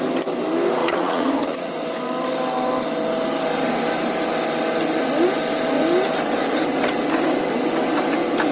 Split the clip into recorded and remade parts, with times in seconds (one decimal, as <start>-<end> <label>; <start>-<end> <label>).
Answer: 0.0-0.8 recorded; 0.8-1.7 remade; 1.7-8.5 recorded